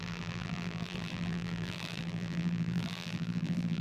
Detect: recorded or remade remade